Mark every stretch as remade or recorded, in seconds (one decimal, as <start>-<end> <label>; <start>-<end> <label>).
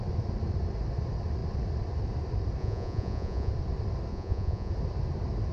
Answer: 0.0-2.6 recorded; 2.6-3.5 remade; 3.5-4.1 recorded; 4.1-4.7 remade; 4.7-5.5 recorded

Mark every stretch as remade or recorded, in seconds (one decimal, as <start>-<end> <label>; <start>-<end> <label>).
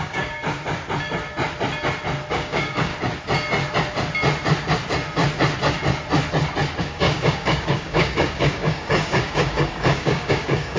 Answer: 0.0-0.4 remade; 0.4-2.3 recorded; 2.3-2.9 remade; 2.9-6.8 recorded; 6.8-10.8 remade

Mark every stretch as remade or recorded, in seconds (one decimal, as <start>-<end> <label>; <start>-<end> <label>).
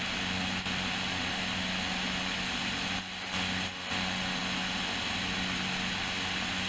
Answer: 0.0-6.7 recorded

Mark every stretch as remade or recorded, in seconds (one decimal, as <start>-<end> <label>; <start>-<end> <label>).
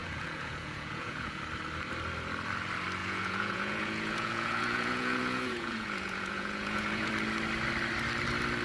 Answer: 0.0-1.4 remade; 1.4-3.0 recorded; 3.0-7.1 remade; 7.1-8.6 recorded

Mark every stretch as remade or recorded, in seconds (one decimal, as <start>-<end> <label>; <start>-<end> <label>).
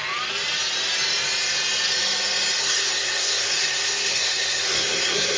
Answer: 0.0-2.6 recorded; 2.6-5.4 remade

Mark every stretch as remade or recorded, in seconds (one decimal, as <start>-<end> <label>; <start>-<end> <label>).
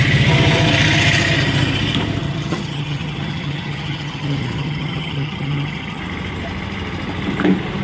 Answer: 0.0-2.2 recorded; 2.2-6.0 remade; 6.0-7.8 recorded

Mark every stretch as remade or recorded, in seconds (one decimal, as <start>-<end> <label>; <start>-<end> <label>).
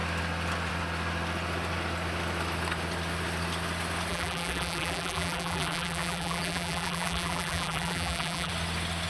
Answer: 0.0-4.1 recorded; 4.1-8.5 remade; 8.5-9.1 recorded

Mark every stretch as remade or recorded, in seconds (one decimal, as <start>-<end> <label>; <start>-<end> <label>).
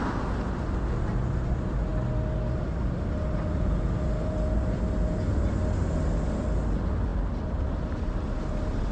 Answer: 0.0-8.9 recorded